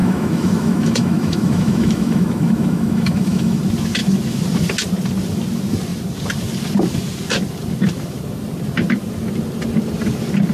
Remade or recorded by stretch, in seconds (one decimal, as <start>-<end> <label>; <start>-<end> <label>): 0.0-3.6 remade; 3.6-10.5 recorded

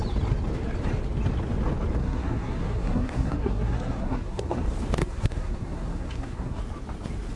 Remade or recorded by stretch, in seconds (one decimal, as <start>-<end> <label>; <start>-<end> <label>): 0.0-2.0 recorded; 2.0-4.6 remade; 4.6-5.0 recorded; 5.0-6.6 remade; 6.6-7.4 recorded

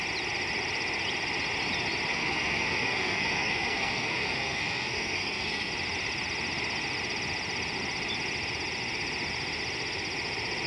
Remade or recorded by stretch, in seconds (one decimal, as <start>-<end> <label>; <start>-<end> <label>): 0.0-2.1 recorded; 2.1-5.7 remade; 5.7-10.7 recorded

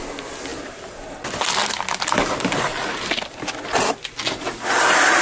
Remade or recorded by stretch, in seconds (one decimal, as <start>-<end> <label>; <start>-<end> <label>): 0.0-0.5 recorded; 0.5-1.1 remade; 1.1-1.6 recorded; 1.6-3.6 remade; 3.6-5.2 recorded

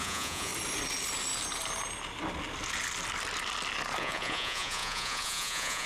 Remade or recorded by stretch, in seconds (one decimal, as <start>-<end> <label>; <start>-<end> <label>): 0.0-0.5 remade; 0.5-4.0 recorded; 4.0-5.9 remade